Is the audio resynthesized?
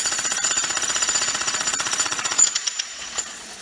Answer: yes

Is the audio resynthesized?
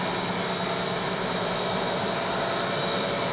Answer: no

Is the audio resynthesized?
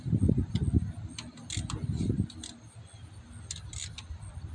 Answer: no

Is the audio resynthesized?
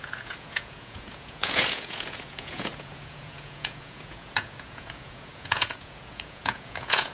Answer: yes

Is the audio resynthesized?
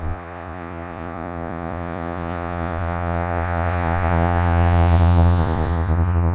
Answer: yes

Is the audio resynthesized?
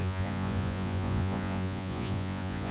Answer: yes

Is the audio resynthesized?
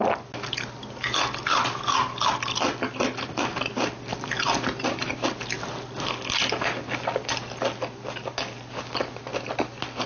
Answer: no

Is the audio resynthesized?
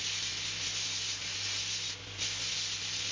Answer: no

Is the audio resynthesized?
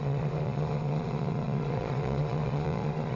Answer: yes